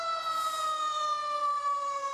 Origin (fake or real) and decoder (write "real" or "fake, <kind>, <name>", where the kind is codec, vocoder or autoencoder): fake, vocoder, BigVGAN v2